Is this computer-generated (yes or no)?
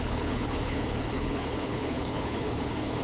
yes